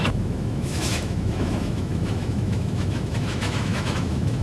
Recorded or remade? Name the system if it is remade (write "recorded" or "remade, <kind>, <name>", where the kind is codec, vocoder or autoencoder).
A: remade, autoencoder, DAC-VAE